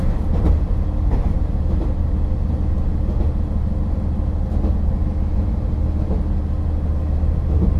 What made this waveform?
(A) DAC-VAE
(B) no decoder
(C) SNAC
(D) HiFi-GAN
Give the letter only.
B